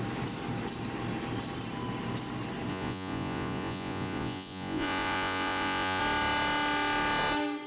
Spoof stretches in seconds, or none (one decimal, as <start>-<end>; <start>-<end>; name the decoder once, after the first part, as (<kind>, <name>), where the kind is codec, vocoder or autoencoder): 2.7-6.0 (vocoder, Vocos)